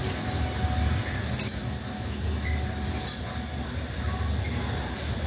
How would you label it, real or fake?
real